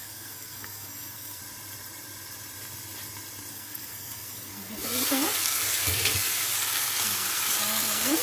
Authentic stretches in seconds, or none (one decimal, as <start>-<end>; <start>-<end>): 1.4-3.5